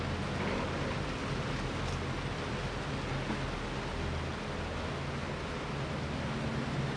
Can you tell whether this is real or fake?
real